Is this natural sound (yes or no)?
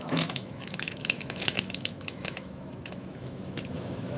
no